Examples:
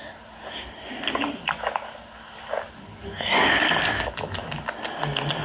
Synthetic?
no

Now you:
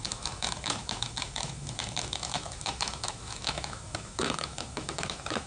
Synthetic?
yes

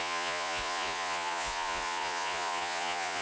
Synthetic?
yes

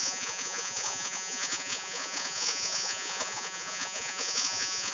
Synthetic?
yes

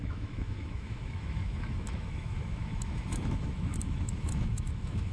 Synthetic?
yes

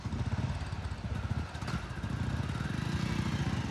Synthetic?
no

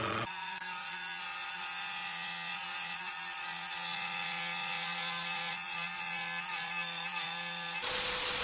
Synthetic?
yes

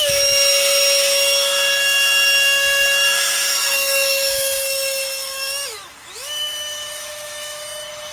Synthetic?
yes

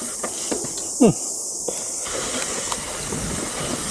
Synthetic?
no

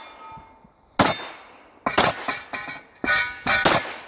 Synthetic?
no